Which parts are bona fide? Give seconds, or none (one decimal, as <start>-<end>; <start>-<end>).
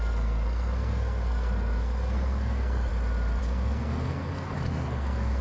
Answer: 2.9-3.4